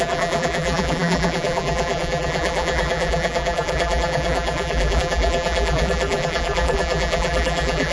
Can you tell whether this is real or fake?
fake